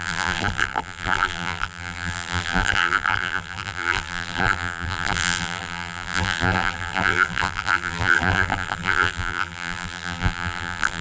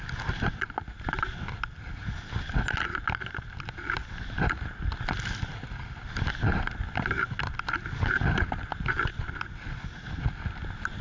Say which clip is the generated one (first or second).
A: first